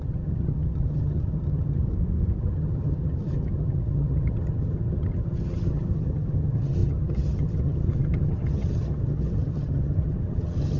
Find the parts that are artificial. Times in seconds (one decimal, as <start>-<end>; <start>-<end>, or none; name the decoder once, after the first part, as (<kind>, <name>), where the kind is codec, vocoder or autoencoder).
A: 0.0-1.9 (vocoder, HiFi-GAN); 2.4-10.8